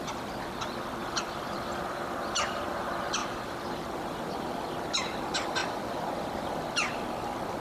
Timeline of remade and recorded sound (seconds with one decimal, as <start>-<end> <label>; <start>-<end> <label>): 0.0-1.0 recorded; 1.0-2.8 remade; 2.8-3.2 recorded; 3.2-4.3 remade; 4.3-5.6 recorded; 5.6-7.0 remade; 7.0-7.6 recorded